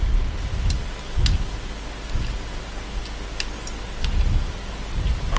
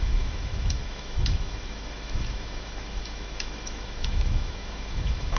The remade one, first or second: second